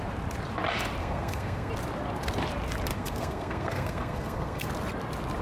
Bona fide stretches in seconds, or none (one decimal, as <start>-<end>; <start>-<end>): 0.0-1.0; 1.7-2.9; 4.7-5.4